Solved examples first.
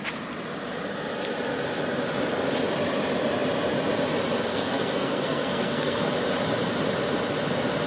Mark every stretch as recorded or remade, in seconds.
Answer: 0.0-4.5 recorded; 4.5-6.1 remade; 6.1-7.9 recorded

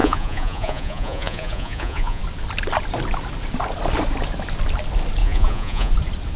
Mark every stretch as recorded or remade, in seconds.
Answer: 0.0-2.2 remade; 2.2-5.2 recorded; 5.2-5.9 remade; 5.9-6.4 recorded